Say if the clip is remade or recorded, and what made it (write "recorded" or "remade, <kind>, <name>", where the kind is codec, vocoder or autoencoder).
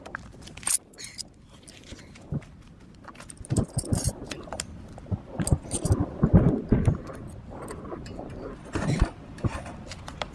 recorded